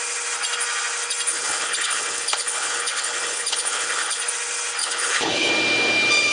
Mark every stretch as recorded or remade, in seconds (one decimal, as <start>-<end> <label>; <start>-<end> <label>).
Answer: 0.0-1.3 recorded; 1.3-4.2 remade; 4.2-4.8 recorded; 4.8-5.5 remade; 5.5-6.3 recorded